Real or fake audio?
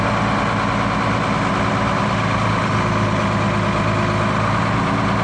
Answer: real